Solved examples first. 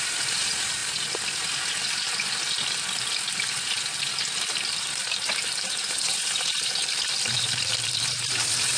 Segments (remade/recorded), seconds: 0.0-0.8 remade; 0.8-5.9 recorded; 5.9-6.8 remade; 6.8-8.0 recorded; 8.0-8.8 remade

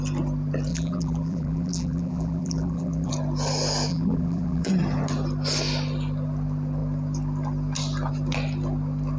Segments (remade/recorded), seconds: 0.0-0.7 recorded; 0.7-3.1 remade; 3.1-3.9 recorded; 3.9-4.7 remade; 4.7-9.2 recorded

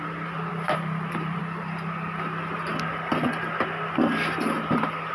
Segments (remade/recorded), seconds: 0.0-0.5 recorded; 0.5-1.4 remade; 1.4-5.1 recorded

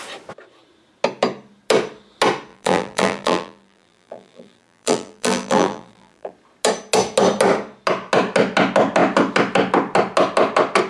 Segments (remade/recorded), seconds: 0.0-2.5 recorded; 2.5-6.3 remade; 6.3-10.9 recorded

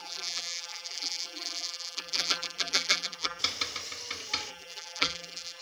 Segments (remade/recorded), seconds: 0.0-3.4 remade; 3.4-4.5 recorded; 4.5-5.6 remade

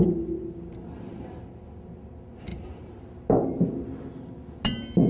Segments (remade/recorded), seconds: 0.0-2.5 recorded; 2.5-3.0 remade; 3.0-5.1 recorded

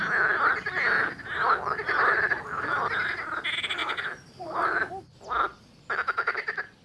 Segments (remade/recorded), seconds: 0.0-3.8 recorded; 3.8-4.9 remade; 4.9-6.8 recorded

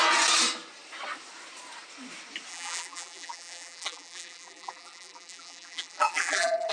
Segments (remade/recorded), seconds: 0.0-2.5 recorded; 2.5-6.7 remade